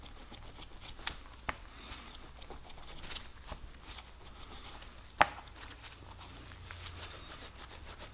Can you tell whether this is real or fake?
real